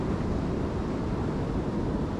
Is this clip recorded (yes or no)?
yes